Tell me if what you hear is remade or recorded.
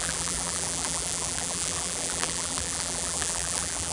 remade